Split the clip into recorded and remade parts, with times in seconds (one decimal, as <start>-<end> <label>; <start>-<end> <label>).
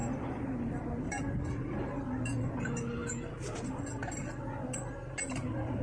0.0-5.8 recorded